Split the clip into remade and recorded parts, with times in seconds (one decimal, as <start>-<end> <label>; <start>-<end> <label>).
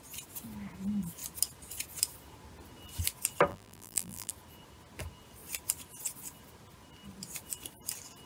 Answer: 0.0-3.5 recorded; 3.5-4.3 remade; 4.3-8.3 recorded